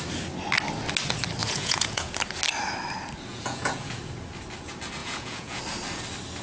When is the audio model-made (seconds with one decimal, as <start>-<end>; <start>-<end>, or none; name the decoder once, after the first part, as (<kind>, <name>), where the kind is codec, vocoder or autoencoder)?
1.4-2.1 (vocoder, Vocos); 3.3-4.0; 5.0-5.6